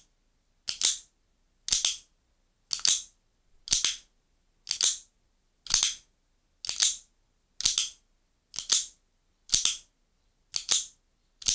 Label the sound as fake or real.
real